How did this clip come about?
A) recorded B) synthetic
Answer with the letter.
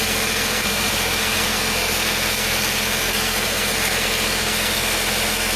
B